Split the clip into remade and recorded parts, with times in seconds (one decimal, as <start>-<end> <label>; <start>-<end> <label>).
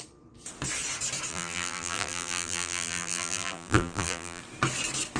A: 0.0-1.3 recorded; 1.3-4.4 remade; 4.4-5.2 recorded